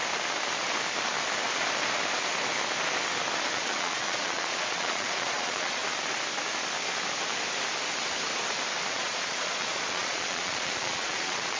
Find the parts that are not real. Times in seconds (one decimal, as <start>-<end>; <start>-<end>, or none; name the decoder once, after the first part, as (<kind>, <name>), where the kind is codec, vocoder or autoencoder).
3.5-5.8 (vocoder, Vocos); 8.9-11.6